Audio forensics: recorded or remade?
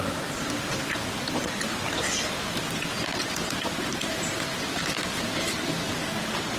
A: recorded